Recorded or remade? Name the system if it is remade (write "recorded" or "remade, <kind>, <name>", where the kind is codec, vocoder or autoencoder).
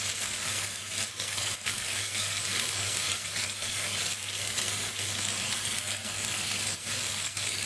remade, codec, SNAC